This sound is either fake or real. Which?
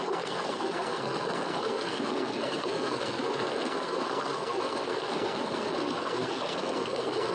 fake